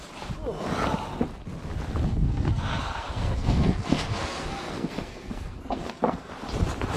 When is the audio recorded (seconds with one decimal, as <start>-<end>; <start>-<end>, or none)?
0.0-2.1; 6.3-7.0